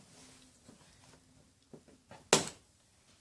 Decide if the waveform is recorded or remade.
recorded